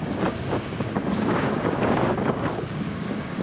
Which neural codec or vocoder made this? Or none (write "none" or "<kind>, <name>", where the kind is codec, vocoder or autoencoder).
codec, DAC